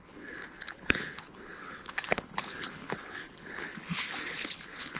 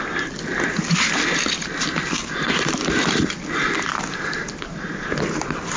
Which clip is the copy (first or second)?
first